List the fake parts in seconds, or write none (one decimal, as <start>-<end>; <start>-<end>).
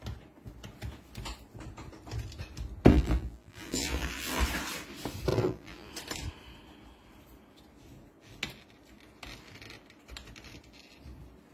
2.9-4.4; 5.3-5.9